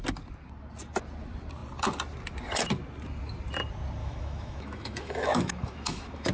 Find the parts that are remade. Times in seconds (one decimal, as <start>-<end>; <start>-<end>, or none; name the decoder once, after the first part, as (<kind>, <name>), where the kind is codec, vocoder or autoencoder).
4.0-6.3 (autoencoder, DAC-VAE)